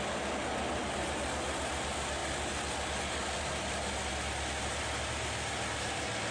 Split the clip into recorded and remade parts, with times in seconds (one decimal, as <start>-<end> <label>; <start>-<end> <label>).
0.0-6.3 recorded